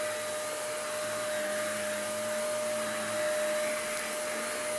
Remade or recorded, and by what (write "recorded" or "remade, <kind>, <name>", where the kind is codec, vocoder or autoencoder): recorded